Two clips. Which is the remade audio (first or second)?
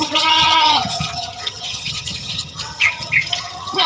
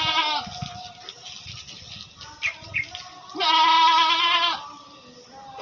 first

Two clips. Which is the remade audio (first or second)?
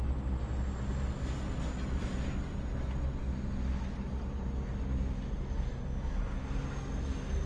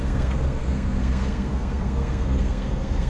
second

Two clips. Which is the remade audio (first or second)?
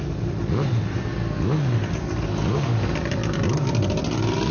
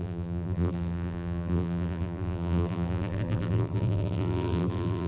second